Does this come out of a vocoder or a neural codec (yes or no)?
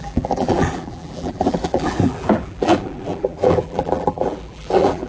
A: yes